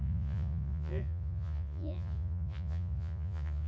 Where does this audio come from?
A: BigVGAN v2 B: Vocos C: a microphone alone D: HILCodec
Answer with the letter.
B